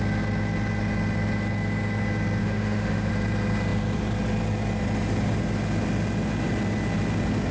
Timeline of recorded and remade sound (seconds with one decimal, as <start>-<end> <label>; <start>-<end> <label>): 0.0-2.4 recorded; 2.4-3.1 remade; 3.1-7.5 recorded